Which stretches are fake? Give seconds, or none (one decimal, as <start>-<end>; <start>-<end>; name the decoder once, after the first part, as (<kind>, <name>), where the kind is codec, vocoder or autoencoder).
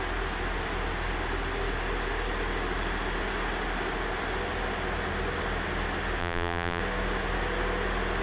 6.2-6.8 (vocoder, BigVGAN v2)